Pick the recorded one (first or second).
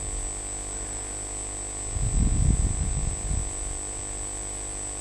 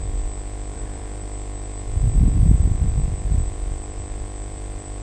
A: first